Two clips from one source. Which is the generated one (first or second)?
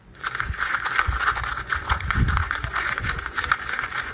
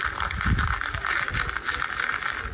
first